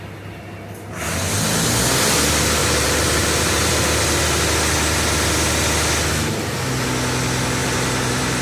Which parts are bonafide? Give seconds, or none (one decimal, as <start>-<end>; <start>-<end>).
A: 0.0-2.6; 3.7-7.6

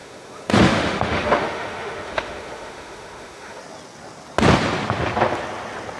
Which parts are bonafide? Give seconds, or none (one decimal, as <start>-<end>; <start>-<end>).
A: 3.6-6.0

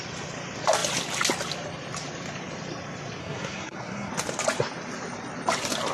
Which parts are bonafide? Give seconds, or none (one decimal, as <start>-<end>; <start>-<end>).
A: 0.0-3.2; 4.1-5.9

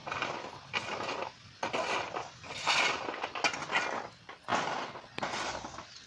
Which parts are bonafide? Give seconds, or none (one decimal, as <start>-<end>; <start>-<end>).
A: 0.0-6.1

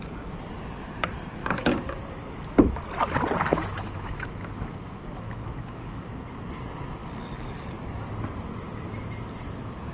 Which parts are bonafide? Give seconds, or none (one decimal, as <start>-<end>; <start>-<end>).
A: 0.0-1.4; 2.8-3.5; 6.1-9.9

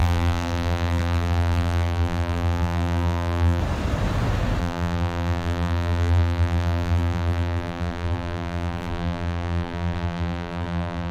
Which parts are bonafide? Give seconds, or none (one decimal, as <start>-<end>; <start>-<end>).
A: 3.6-4.6

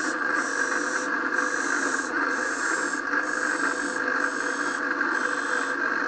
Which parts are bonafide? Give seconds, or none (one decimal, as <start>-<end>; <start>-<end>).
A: 0.5-1.9; 2.8-6.1

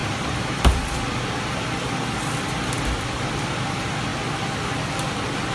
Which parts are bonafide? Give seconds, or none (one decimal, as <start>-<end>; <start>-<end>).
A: 0.0-5.5